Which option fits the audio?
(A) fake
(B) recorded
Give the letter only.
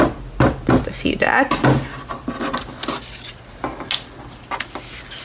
B